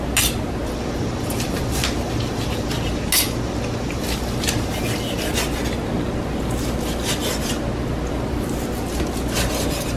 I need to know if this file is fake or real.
real